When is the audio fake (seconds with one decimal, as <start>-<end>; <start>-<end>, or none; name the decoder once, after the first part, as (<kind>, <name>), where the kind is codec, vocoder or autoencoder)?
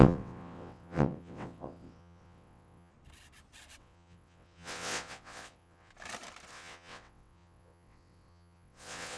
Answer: 0.0-2.9 (vocoder, WaveNeXt); 3.8-5.9; 6.5-9.2